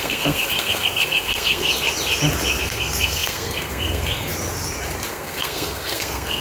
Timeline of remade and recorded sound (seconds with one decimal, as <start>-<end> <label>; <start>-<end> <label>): 0.0-1.7 remade; 1.7-2.6 recorded; 2.6-4.3 remade; 4.3-5.1 recorded; 5.1-6.4 remade